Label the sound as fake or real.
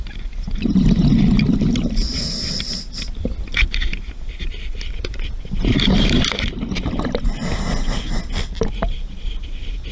real